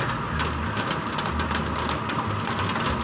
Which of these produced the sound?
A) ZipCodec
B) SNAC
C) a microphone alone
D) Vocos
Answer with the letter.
C